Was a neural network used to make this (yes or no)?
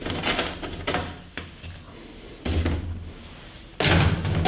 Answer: no